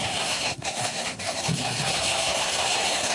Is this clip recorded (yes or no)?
no